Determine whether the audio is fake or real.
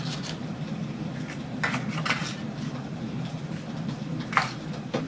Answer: real